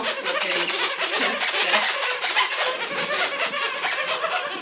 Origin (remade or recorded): remade